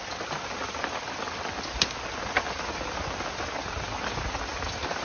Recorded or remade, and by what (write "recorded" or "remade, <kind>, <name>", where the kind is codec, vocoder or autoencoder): recorded